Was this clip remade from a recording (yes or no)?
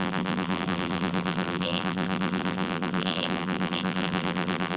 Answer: yes